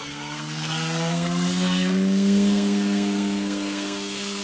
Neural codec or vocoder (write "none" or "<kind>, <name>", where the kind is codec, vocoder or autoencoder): codec, SNAC